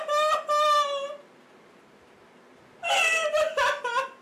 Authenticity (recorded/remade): recorded